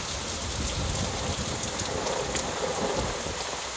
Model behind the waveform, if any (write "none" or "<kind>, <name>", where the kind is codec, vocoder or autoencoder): none